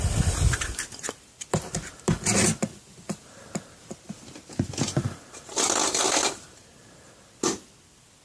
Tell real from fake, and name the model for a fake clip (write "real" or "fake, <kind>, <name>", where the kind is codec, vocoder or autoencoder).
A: real